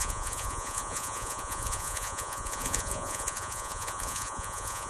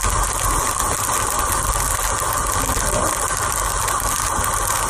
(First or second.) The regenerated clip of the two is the first